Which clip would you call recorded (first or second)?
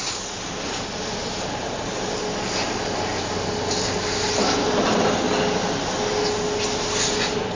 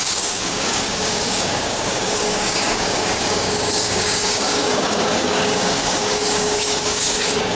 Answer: first